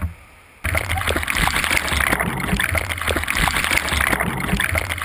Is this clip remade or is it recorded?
recorded